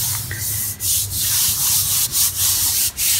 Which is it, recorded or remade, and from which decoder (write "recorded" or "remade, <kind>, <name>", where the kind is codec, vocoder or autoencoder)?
recorded